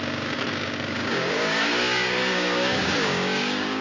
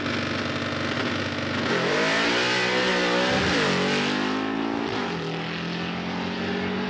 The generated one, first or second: first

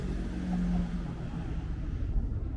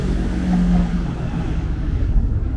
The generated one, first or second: second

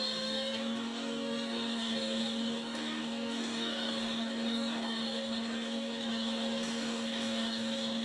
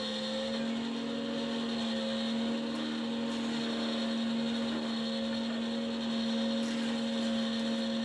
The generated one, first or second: first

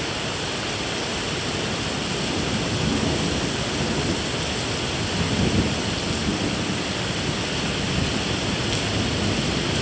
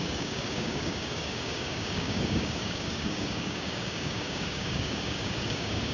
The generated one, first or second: second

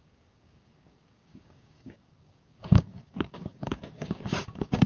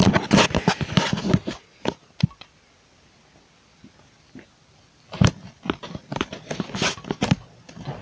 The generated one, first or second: first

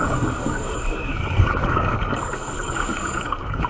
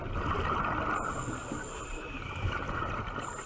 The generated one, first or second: first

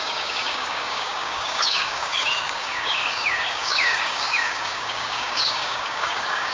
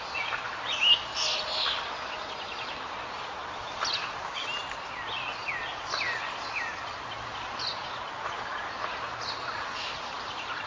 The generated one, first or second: first